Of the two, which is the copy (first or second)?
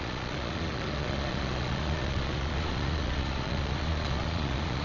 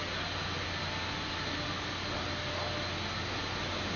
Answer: first